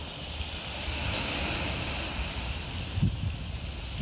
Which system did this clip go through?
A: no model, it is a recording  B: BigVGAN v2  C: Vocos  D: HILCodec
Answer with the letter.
A